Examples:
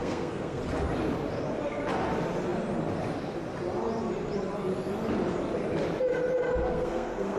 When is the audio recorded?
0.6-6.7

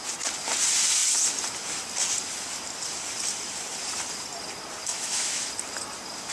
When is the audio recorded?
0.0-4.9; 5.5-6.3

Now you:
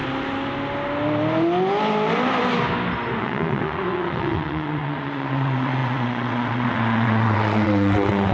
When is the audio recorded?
0.0-3.2

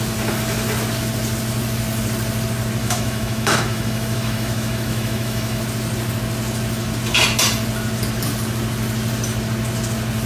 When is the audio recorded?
0.0-2.8; 5.6-10.3